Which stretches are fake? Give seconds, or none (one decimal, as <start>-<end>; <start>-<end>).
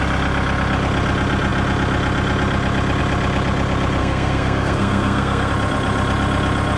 4.0-5.5